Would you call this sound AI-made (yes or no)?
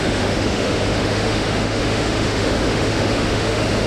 yes